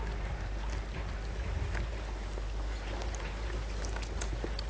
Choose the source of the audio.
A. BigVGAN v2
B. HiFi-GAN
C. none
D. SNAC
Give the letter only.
C